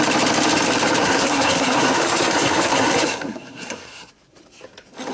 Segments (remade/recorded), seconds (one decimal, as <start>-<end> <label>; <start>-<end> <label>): 0.0-1.0 recorded; 1.0-4.1 remade; 4.1-5.1 recorded